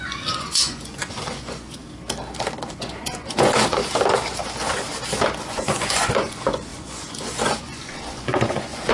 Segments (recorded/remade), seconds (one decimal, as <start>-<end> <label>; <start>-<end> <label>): 0.0-1.8 remade; 1.8-2.6 recorded; 2.6-3.8 remade; 3.8-5.4 recorded; 5.4-8.9 remade